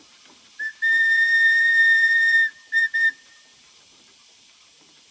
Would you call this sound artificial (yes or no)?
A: yes